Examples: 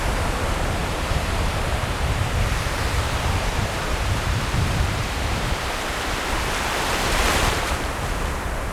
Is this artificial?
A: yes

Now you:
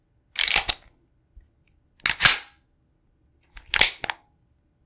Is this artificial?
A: no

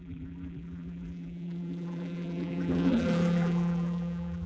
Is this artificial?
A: yes